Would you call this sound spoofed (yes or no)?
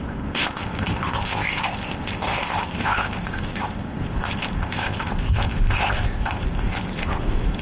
yes